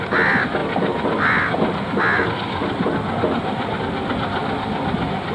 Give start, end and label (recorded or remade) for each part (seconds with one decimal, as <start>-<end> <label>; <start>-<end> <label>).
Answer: 0.0-0.6 recorded; 0.6-3.8 remade; 3.8-5.3 recorded